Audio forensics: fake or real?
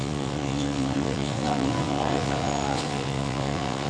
fake